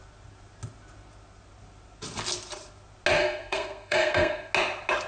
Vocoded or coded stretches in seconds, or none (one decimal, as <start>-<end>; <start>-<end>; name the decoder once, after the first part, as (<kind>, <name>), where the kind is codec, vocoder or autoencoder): 3.2-4.5 (codec, SNAC)